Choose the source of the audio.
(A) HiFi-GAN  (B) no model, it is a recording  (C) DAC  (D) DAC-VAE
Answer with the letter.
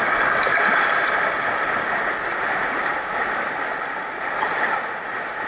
B